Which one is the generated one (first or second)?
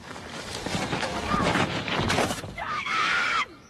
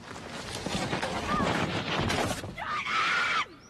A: first